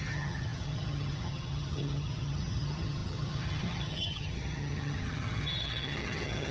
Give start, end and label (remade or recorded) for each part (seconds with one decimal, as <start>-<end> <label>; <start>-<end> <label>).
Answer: 0.0-6.5 remade